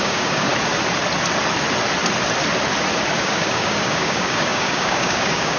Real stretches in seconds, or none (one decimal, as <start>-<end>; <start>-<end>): 0.5-3.2